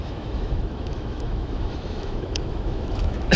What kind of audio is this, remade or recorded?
remade